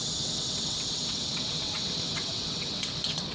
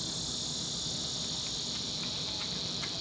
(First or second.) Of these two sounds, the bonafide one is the second